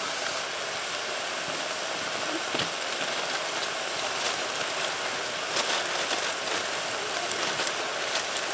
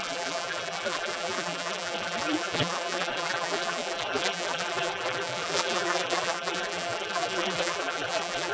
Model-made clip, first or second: second